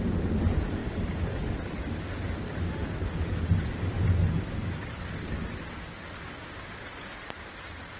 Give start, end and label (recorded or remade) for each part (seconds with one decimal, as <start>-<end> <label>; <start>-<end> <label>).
0.0-0.8 recorded; 0.8-3.9 remade; 3.9-8.0 recorded